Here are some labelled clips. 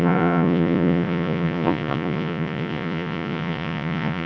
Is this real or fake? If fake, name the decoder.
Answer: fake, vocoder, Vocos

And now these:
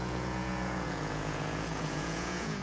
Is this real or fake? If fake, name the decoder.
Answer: fake, vocoder, Vocos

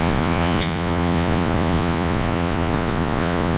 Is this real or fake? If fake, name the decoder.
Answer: fake, vocoder, Vocos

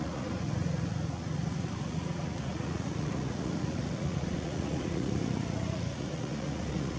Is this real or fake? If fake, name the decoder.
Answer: fake, vocoder, Vocos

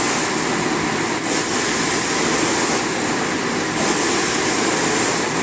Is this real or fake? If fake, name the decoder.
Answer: real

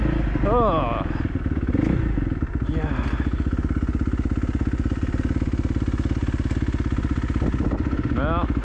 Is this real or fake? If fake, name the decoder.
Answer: real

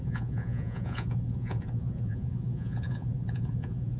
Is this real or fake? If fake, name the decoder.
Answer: fake, vocoder, Vocos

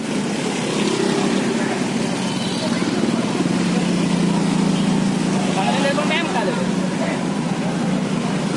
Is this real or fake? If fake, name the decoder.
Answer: real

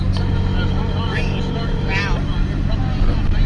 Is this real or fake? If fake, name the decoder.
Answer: real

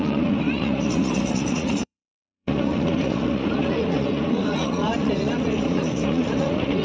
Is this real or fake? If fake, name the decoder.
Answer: fake, vocoder, Vocos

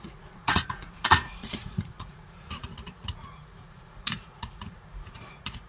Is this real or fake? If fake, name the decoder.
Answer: fake, vocoder, Vocos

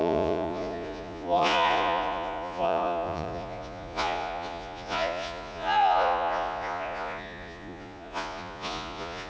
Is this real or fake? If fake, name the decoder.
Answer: fake, vocoder, Vocos